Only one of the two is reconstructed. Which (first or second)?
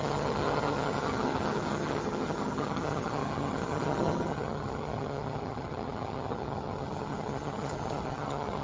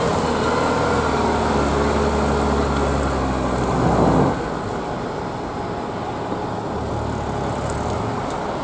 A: first